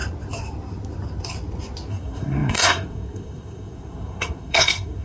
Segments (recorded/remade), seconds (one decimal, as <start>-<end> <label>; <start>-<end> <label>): 0.0-1.9 recorded; 1.9-5.0 remade